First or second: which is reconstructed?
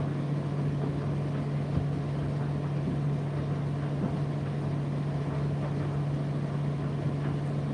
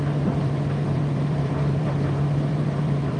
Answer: second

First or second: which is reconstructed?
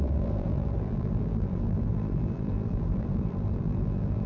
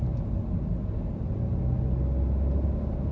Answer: first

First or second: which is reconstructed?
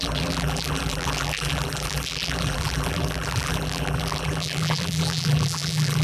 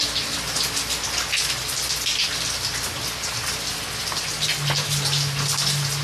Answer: first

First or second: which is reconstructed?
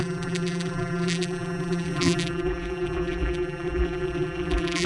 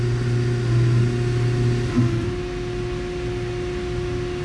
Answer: first